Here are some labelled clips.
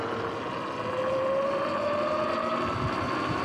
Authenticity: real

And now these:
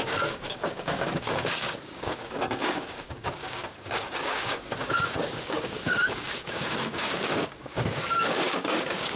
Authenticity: fake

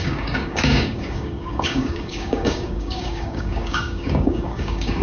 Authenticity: fake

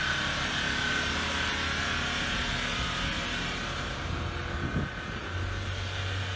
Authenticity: real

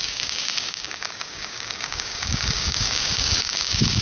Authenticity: fake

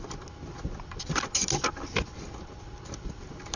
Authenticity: real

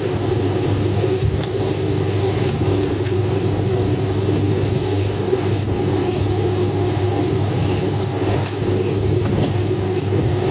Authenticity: fake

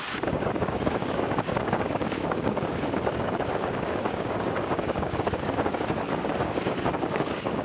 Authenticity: fake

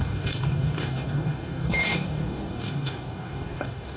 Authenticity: fake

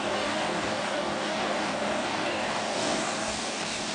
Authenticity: fake